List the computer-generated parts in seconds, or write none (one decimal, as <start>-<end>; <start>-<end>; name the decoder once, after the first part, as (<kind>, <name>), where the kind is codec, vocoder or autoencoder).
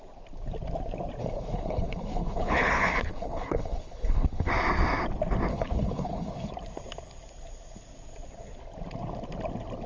1.2-4.5 (codec, HILCodec); 5.5-6.5